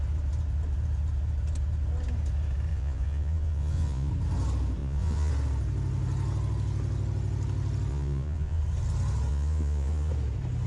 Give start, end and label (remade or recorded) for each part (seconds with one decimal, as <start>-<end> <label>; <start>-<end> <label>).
0.0-2.7 recorded; 2.7-4.1 remade; 4.1-4.8 recorded; 4.8-5.3 remade; 5.3-7.9 recorded; 7.9-8.6 remade; 8.6-9.3 recorded; 9.3-10.1 remade; 10.1-10.7 recorded